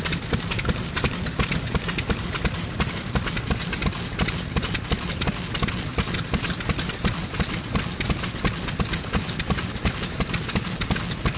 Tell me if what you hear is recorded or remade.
recorded